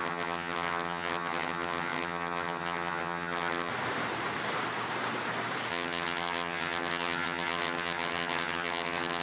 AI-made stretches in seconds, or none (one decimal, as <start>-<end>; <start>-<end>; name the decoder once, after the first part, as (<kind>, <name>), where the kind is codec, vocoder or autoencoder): 0.0-3.7 (vocoder, HiFi-GAN); 5.7-9.2